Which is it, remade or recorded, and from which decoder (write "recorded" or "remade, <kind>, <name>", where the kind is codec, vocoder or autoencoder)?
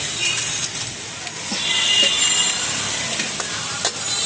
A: recorded